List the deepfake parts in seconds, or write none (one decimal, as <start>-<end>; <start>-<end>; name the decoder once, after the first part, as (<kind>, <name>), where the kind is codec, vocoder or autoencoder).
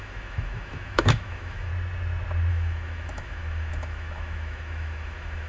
0.0-1.7 (autoencoder, DAC-VAE); 2.5-5.5